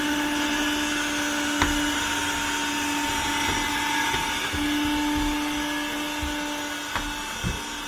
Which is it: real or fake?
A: real